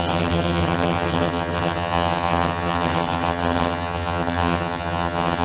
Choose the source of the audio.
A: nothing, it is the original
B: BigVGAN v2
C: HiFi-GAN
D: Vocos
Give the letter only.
C